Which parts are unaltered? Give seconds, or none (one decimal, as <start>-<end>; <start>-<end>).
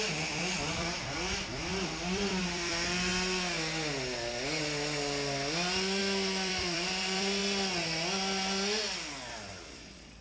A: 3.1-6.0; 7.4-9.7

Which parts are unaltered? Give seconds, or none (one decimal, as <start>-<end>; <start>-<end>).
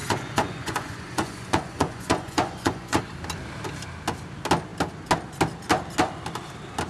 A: 3.0-6.9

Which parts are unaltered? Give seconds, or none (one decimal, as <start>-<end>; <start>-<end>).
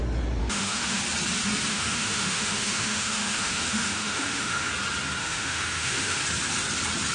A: 0.0-0.4; 1.0-1.7; 4.7-5.2; 6.2-7.1